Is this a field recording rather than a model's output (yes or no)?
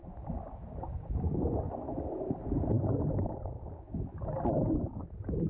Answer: yes